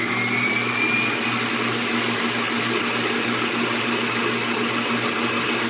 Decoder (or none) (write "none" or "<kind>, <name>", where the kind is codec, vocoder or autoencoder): none